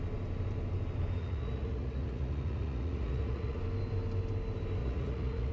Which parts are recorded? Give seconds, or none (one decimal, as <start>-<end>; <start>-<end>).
0.0-1.2; 3.6-4.8